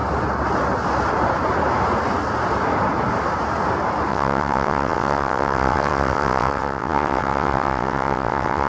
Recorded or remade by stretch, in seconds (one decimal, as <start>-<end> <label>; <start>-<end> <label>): 0.0-4.1 recorded; 4.1-8.7 remade